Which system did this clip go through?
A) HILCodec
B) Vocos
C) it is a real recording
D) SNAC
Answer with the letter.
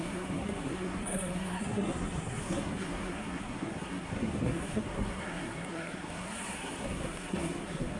D